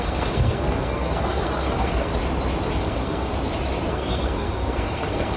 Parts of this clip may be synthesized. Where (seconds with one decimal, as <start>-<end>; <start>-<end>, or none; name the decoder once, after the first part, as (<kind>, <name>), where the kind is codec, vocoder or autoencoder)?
0.0-2.1 (codec, SNAC); 2.8-3.3; 3.9-5.4